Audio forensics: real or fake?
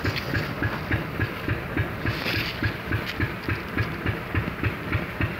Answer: real